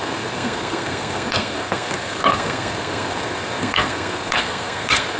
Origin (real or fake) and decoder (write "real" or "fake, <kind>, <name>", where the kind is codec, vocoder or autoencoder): fake, codec, SNAC